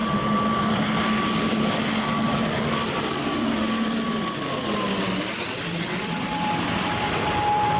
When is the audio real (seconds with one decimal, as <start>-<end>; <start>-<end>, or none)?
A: 0.0-7.8